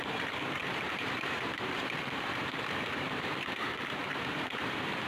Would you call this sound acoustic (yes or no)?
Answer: no